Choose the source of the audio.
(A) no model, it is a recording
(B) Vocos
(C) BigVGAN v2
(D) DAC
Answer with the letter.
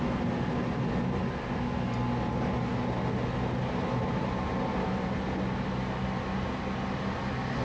A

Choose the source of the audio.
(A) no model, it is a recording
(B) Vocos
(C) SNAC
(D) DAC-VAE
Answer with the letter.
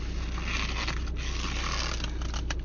A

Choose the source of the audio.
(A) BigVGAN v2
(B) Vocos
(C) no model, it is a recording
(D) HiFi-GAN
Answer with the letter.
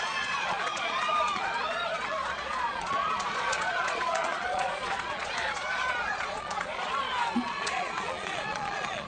B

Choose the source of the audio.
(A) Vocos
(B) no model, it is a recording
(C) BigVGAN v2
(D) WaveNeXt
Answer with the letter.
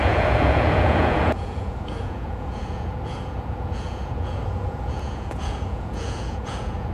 A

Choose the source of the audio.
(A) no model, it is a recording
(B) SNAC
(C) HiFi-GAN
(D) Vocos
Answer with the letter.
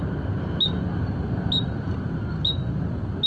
A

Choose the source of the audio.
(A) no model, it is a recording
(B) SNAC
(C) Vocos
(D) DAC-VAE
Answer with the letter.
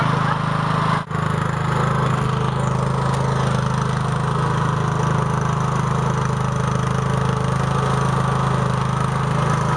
A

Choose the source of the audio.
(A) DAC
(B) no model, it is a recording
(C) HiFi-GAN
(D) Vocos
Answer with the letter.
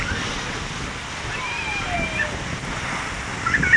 B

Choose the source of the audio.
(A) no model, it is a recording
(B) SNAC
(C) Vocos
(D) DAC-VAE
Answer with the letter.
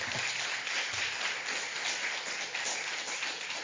A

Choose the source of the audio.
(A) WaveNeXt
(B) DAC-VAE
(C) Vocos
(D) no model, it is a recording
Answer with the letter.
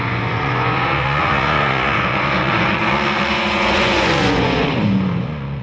C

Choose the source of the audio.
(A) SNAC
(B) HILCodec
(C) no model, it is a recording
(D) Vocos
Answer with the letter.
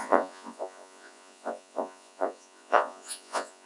D